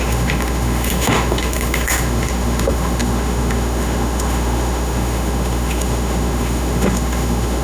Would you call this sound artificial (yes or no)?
yes